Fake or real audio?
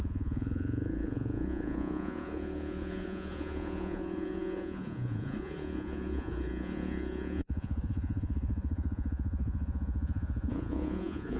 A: fake